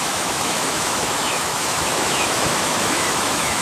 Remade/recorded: remade